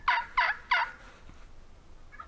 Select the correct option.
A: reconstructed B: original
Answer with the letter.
B